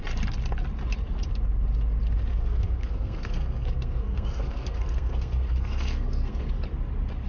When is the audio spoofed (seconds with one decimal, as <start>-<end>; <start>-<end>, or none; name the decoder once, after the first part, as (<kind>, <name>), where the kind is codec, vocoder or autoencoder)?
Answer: 2.3-6.5 (codec, SNAC)